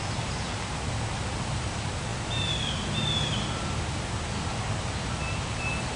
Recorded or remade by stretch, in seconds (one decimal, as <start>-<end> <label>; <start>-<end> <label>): 0.0-6.0 recorded